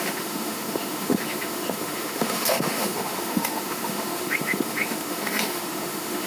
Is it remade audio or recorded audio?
remade